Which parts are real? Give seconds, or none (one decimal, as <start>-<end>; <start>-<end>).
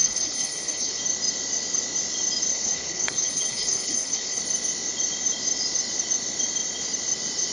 1.0-2.5; 4.4-7.5